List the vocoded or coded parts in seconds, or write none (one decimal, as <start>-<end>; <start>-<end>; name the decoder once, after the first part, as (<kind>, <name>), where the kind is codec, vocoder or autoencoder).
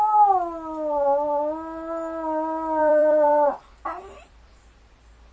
2.8-4.5 (vocoder, BigVGAN v2)